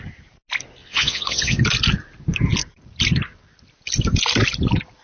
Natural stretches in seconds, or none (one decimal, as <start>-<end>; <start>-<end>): 0.0-0.8; 1.6-5.0

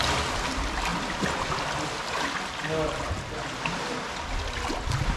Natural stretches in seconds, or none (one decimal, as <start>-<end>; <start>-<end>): 0.0-5.2

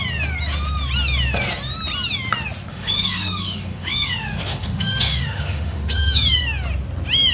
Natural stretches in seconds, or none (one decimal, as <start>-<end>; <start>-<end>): 0.0-2.7; 6.4-7.3

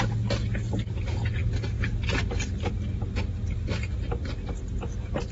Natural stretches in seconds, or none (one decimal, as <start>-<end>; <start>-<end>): 0.0-5.3

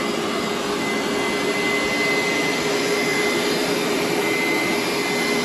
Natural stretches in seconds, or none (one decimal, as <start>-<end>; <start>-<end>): 0.0-3.1; 4.2-5.4

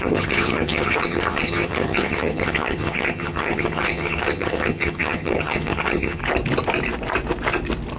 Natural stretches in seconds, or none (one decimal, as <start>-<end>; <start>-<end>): 6.2-8.0

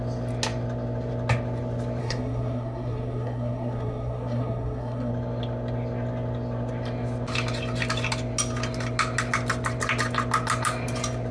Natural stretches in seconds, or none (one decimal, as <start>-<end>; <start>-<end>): 0.0-2.0; 5.1-11.3